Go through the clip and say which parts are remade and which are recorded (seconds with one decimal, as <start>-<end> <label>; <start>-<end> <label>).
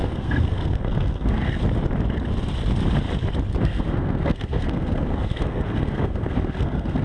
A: 0.0-1.6 remade; 1.6-3.6 recorded; 3.6-7.0 remade